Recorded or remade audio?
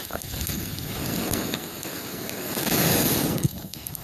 remade